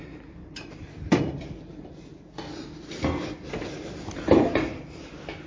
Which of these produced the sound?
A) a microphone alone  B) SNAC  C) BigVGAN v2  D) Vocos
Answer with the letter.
C